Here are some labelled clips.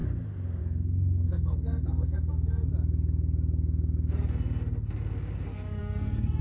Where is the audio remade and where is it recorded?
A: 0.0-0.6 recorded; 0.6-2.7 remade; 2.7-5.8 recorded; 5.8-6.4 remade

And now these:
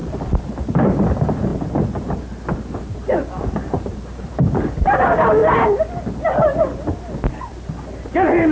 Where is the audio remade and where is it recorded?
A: 0.0-8.5 recorded